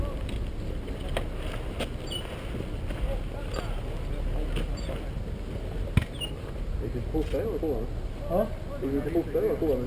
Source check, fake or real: real